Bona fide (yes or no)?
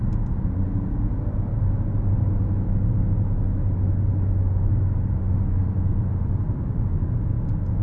yes